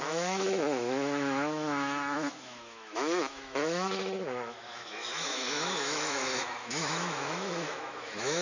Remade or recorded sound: remade